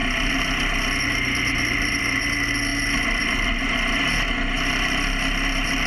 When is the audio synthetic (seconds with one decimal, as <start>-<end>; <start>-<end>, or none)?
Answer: none